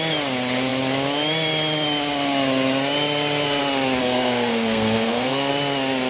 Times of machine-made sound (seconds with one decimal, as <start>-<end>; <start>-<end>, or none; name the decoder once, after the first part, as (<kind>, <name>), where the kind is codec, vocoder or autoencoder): 4.0-5.5 (codec, SNAC)